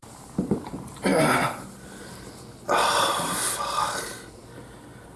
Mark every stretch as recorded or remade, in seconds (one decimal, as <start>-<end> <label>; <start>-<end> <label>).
0.0-5.2 recorded